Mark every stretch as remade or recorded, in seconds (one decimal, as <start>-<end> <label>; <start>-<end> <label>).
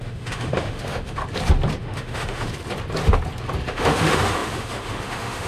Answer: 0.0-1.2 remade; 1.2-1.8 recorded; 1.8-2.5 remade; 2.5-3.7 recorded; 3.7-5.5 remade